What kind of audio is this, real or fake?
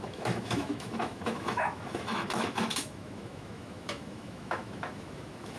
fake